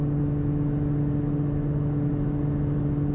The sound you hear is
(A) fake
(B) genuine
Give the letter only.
B